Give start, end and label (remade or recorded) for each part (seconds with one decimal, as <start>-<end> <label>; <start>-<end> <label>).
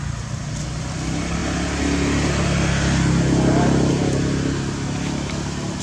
0.0-5.8 recorded